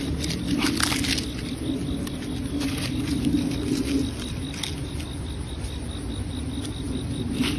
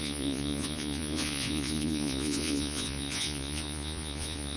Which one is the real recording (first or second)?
first